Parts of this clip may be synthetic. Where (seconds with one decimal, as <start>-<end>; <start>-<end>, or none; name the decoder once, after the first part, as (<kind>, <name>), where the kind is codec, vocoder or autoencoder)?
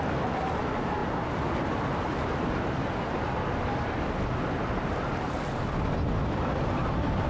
none